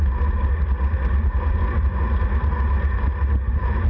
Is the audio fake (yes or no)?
no